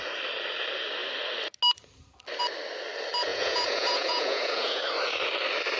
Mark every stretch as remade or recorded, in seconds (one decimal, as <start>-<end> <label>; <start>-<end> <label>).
0.0-3.3 recorded; 3.3-4.8 remade; 4.8-5.8 recorded